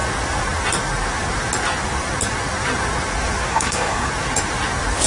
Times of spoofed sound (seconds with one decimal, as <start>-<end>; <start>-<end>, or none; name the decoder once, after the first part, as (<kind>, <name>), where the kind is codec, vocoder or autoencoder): 3.5-4.1 (codec, SNAC)